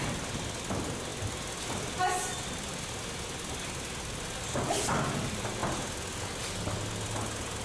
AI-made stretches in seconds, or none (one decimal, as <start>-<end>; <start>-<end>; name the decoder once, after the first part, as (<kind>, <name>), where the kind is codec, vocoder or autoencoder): none